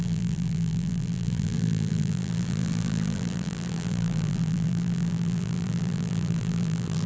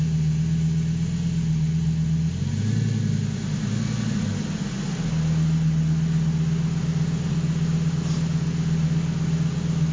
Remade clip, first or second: first